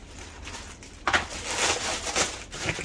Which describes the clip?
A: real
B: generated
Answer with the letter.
A